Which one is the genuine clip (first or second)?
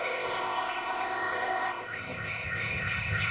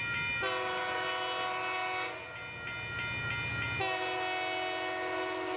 second